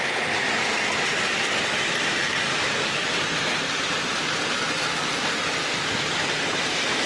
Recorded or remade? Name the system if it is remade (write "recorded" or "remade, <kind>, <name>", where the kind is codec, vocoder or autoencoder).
remade, vocoder, BigVGAN v2